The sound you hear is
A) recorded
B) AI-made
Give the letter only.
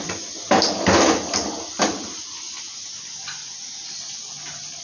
A